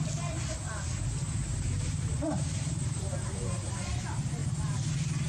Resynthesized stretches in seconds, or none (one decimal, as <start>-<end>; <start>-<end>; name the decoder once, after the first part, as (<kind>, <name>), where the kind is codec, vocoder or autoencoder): 1.5-3.7 (vocoder, BigVGAN v2); 4.4-5.3